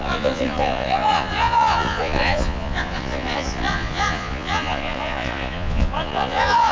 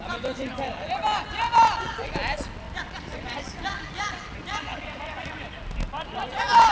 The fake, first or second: first